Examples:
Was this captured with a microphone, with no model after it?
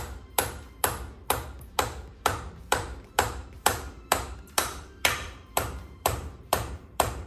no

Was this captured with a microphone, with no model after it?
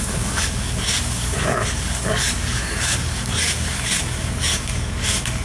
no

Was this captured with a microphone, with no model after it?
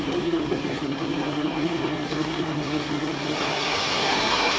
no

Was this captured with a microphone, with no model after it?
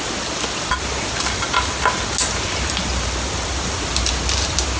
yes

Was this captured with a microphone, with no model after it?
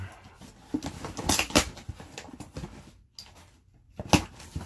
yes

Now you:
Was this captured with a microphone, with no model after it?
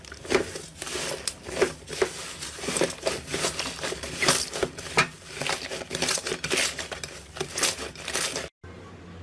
yes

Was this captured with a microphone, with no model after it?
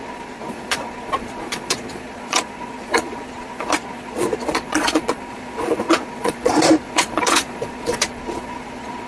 no